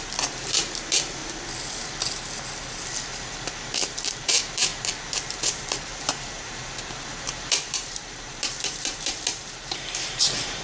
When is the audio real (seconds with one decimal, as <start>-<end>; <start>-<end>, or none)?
1.2-4.2; 4.7-5.3